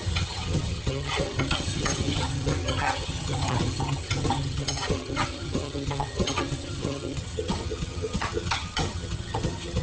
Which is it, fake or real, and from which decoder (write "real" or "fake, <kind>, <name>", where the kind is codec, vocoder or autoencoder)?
fake, vocoder, HiFi-GAN